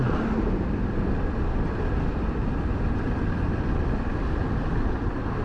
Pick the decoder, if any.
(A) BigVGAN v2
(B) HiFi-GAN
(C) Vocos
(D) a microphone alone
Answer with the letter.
D